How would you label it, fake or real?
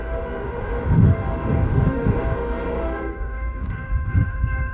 fake